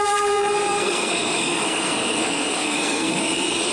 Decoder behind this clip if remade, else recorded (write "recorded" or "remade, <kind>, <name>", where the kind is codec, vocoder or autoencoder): remade, codec, SNAC